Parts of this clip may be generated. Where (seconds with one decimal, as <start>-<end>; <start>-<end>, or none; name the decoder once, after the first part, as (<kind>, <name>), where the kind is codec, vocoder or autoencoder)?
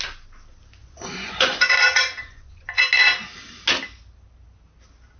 0.8-2.8 (vocoder, Vocos)